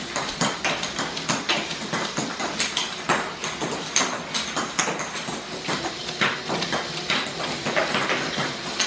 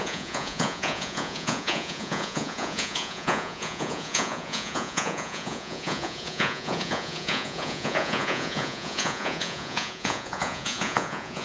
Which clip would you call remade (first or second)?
second